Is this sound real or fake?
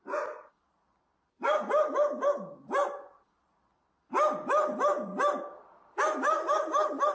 real